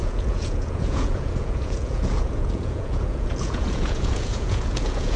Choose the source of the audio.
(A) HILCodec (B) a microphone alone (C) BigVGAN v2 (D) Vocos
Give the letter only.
D